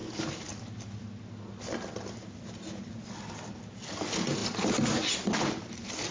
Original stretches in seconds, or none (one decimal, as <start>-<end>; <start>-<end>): 0.0-6.1